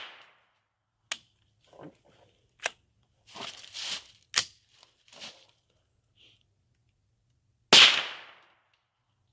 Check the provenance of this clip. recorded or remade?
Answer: recorded